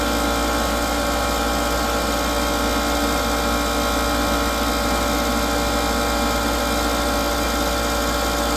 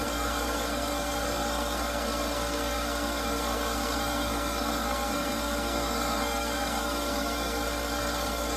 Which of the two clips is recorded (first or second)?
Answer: first